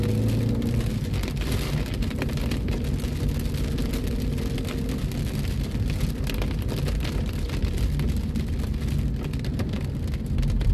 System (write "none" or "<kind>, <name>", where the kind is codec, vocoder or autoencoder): none